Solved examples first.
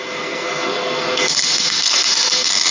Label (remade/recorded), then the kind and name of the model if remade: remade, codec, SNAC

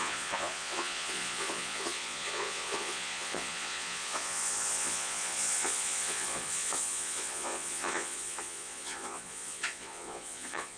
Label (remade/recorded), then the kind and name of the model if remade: remade, vocoder, Vocos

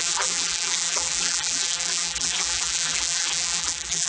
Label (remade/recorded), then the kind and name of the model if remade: remade, vocoder, BigVGAN v2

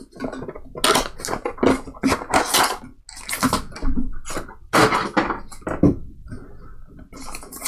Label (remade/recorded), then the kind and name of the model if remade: recorded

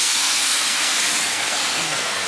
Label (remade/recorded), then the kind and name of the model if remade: remade, codec, SNAC